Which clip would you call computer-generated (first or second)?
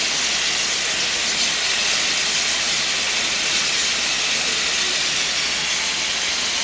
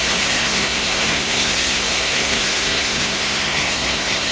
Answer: second